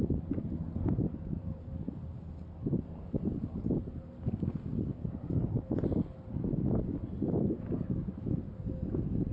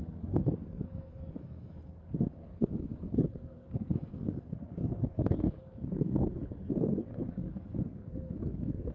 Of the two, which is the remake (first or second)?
second